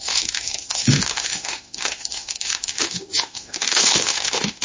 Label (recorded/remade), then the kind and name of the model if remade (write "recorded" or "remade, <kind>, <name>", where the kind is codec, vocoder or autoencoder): remade, autoencoder, DAC-VAE